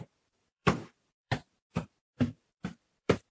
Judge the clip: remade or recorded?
remade